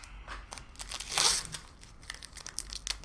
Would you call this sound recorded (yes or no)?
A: yes